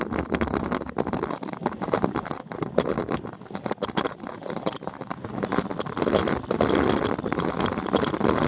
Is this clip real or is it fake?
real